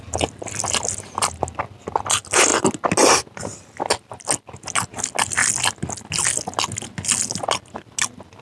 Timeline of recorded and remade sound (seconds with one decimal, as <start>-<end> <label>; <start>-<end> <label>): 0.0-8.4 recorded